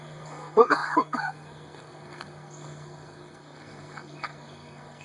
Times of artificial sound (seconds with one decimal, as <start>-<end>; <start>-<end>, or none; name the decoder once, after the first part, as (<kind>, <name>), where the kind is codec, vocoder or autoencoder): 0.0-5.0 (codec, SNAC)